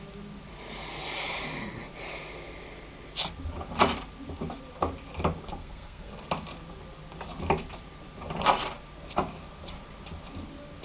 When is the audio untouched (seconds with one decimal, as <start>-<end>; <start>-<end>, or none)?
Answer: 0.0-5.6; 6.1-10.8